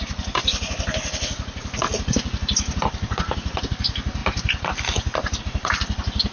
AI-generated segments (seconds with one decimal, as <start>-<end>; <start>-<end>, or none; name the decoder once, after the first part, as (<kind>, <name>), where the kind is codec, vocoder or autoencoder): none